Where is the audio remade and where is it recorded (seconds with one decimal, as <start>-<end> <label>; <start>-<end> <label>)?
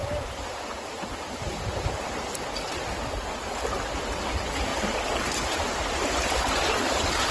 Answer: 0.0-3.3 remade; 3.3-4.7 recorded; 4.7-7.3 remade